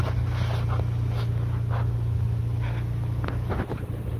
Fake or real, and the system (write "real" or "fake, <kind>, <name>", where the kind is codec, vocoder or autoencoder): real